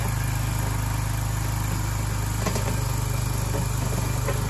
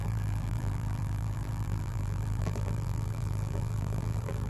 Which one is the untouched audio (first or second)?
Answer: first